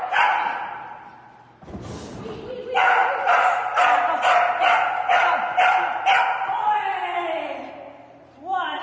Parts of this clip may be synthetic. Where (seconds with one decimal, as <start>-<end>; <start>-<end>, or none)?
none